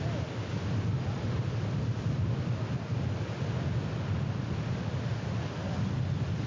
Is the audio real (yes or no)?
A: yes